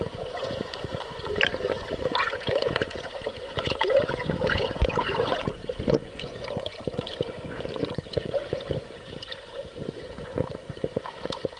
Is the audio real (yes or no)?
no